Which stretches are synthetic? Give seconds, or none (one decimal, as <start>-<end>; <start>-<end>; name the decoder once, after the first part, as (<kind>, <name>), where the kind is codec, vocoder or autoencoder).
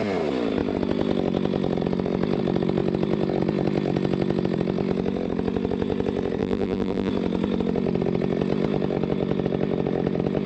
6.4-7.1 (vocoder, BigVGAN v2)